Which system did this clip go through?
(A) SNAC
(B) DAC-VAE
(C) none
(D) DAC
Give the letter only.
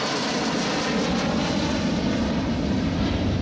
C